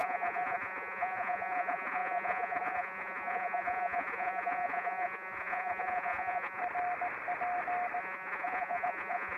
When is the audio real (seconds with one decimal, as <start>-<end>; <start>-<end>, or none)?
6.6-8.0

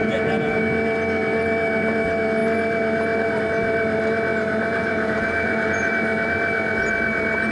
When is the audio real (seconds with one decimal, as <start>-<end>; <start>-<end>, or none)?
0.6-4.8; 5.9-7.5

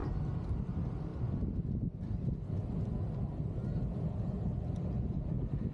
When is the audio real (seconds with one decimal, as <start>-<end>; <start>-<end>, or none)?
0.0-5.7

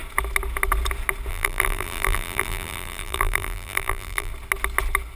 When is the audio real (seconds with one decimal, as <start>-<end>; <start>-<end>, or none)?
0.0-1.3; 4.3-5.2